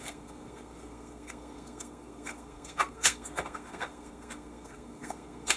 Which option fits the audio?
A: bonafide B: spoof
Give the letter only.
B